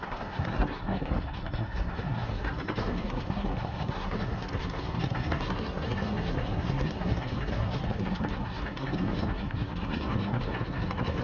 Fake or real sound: fake